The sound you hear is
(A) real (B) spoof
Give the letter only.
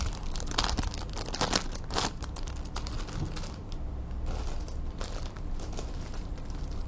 A